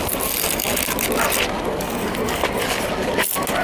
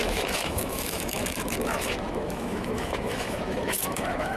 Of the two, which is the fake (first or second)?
second